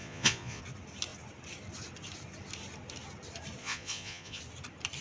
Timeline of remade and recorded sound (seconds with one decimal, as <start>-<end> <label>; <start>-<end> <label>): 0.0-0.6 remade; 0.6-3.6 recorded; 3.6-4.4 remade; 4.4-5.0 recorded